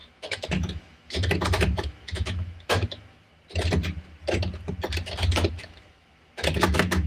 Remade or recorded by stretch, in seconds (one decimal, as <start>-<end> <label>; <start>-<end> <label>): 0.0-3.3 remade; 3.3-5.5 recorded; 5.5-7.1 remade